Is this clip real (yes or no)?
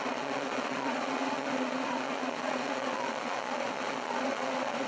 no